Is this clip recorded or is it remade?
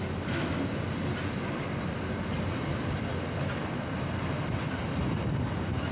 recorded